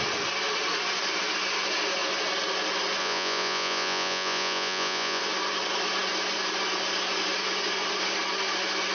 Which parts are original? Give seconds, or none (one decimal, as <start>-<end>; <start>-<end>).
0.0-3.0; 5.2-8.9